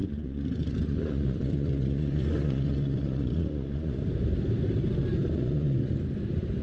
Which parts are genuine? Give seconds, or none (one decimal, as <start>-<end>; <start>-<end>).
4.0-5.2; 5.9-6.6